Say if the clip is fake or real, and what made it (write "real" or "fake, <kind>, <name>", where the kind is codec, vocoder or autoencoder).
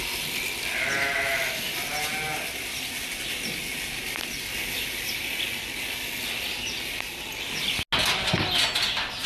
real